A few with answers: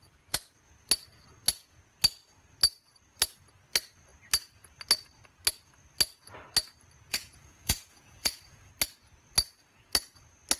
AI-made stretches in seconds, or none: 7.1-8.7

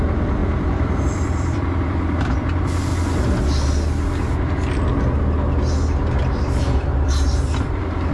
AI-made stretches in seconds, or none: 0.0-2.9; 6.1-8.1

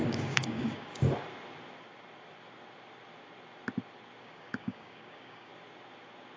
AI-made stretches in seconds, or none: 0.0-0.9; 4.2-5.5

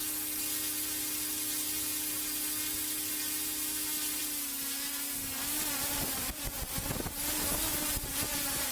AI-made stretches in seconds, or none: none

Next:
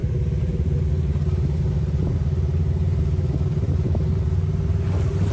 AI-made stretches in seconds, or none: none

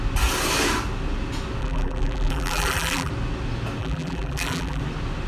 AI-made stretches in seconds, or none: 1.6-3.1; 3.8-4.8

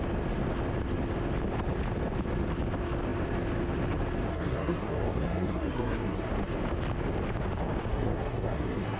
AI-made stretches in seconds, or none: 4.3-6.3; 7.9-9.0

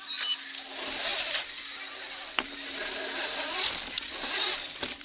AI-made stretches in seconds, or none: none